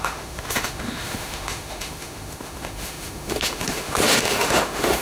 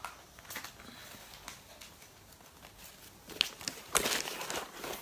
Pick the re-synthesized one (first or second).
first